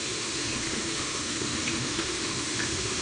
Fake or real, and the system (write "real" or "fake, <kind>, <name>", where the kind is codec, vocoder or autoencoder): fake, autoencoder, DAC-VAE